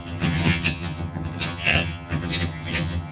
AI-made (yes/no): yes